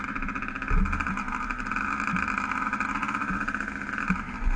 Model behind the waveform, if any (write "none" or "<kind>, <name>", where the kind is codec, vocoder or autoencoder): none